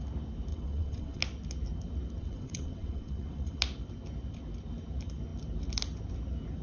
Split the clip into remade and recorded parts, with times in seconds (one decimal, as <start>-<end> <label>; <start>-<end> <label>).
0.0-0.5 recorded; 0.5-1.2 remade; 1.2-2.2 recorded; 2.2-3.6 remade; 3.6-6.6 recorded